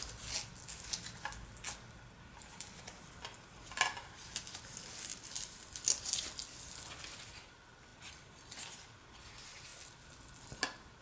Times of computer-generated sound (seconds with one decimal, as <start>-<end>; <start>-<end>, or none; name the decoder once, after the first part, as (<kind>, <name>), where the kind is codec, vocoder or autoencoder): 7.9-8.8 (vocoder, BigVGAN v2)